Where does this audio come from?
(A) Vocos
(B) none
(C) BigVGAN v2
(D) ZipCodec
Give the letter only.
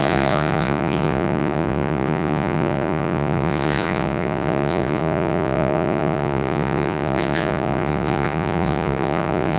A